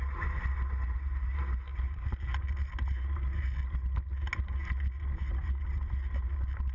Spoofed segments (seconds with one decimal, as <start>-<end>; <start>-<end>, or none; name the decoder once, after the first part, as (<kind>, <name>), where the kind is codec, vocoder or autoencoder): none